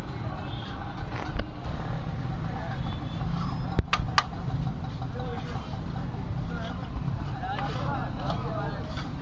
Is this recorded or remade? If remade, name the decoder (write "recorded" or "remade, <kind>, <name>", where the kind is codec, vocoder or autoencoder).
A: recorded